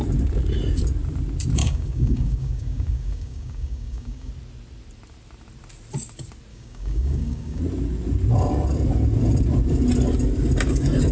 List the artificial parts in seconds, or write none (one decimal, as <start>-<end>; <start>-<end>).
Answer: 1.6-4.3; 6.5-7.6